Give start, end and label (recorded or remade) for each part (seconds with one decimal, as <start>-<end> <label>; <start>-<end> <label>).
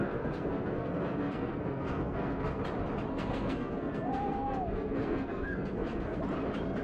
0.0-2.6 remade; 2.6-3.1 recorded; 3.1-6.2 remade; 6.2-6.8 recorded